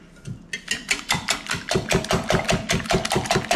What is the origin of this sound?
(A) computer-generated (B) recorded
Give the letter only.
B